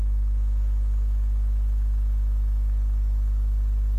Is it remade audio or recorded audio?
recorded